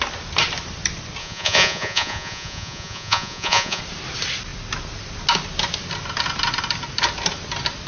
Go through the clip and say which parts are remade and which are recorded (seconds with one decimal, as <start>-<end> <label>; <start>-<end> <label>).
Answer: 0.0-1.2 recorded; 1.2-3.8 remade; 3.8-7.9 recorded